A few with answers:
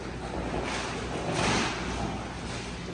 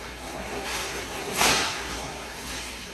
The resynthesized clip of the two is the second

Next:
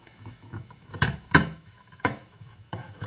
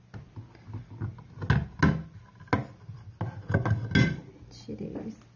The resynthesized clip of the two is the first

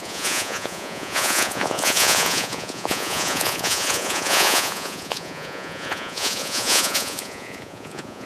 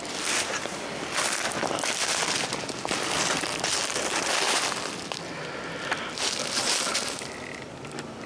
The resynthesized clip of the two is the first